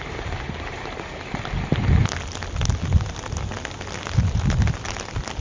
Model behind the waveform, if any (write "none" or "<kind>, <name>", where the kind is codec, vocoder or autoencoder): none